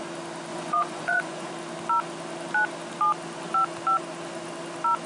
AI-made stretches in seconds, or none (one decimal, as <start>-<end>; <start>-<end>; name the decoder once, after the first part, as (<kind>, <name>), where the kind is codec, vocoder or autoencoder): 0.5-1.5 (vocoder, Vocos)